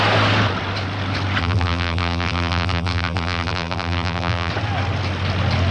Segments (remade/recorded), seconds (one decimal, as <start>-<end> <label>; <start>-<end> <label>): 0.0-1.4 recorded; 1.4-4.5 remade; 4.5-5.7 recorded